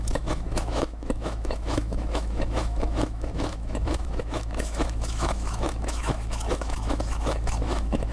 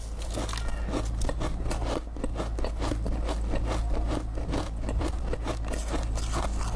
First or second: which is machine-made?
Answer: first